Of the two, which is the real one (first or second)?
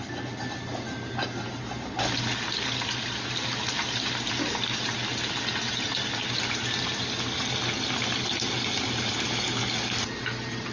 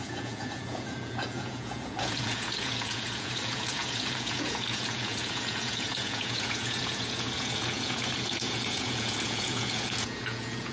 first